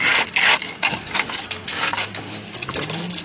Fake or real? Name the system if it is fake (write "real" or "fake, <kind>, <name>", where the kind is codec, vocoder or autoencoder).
real